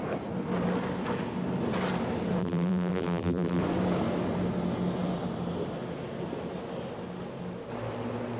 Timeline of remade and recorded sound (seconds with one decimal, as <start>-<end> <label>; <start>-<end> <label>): 0.0-2.4 recorded; 2.4-3.6 remade; 3.6-8.4 recorded

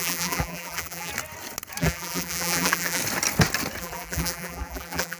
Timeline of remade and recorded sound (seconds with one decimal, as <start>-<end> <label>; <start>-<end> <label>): 0.0-1.1 remade; 1.1-1.8 recorded; 1.8-3.0 remade; 3.0-3.8 recorded; 3.8-5.2 remade

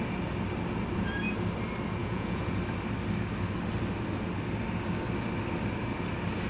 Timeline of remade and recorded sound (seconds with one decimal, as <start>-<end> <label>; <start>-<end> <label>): 0.0-2.0 recorded; 2.0-2.6 remade; 2.6-6.5 recorded

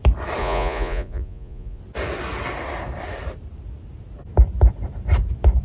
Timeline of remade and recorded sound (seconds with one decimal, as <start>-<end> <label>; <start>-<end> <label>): 0.0-0.4 recorded; 0.4-1.8 remade; 1.8-5.6 recorded

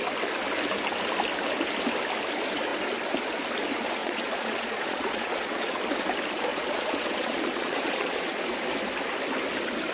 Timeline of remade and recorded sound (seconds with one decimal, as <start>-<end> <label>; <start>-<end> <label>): 0.0-4.0 recorded; 4.0-5.8 remade; 5.8-6.5 recorded; 6.5-8.4 remade; 8.4-9.9 recorded